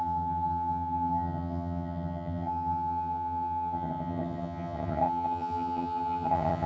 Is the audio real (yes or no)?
no